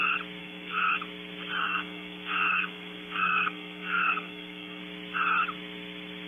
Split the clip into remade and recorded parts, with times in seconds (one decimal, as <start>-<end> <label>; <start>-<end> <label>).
0.0-0.4 recorded; 0.4-0.9 remade; 0.9-1.6 recorded; 1.6-4.8 remade; 4.8-6.3 recorded